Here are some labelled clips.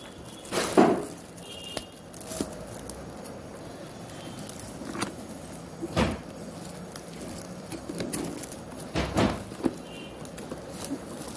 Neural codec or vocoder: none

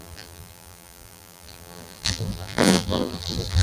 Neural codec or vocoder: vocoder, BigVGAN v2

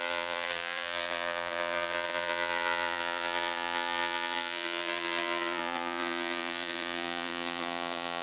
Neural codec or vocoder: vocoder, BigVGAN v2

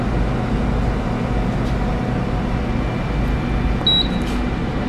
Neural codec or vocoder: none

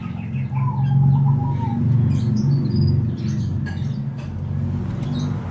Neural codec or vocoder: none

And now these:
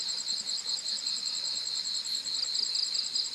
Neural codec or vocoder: vocoder, BigVGAN v2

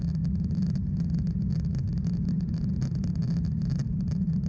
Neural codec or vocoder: vocoder, BigVGAN v2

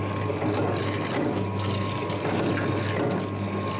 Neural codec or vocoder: none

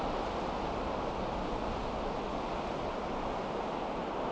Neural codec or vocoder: none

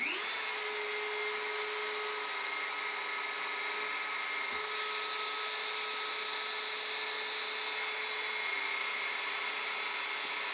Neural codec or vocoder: none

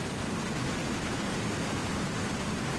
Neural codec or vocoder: none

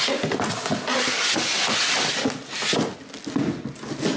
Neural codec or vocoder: none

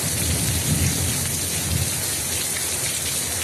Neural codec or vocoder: none